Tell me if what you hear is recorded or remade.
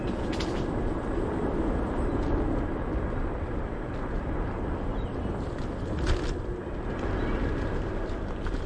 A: recorded